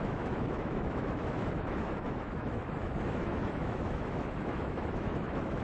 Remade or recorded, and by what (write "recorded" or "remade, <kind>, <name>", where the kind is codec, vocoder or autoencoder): remade, autoencoder, DAC-VAE